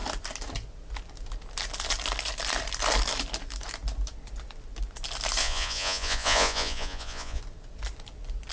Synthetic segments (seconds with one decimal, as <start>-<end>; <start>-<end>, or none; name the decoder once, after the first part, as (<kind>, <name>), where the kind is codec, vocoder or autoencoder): 5.4-7.4 (vocoder, Vocos)